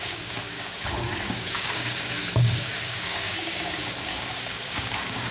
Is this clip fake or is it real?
fake